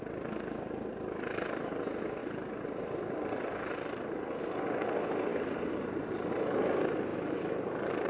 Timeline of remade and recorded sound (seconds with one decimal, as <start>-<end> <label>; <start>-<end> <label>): 0.0-2.2 recorded; 2.2-4.4 remade; 4.4-5.3 recorded; 5.3-6.3 remade; 6.3-7.1 recorded; 7.1-8.1 remade